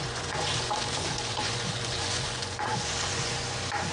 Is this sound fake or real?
fake